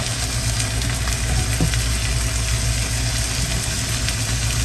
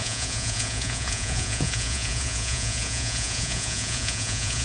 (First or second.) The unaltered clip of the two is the first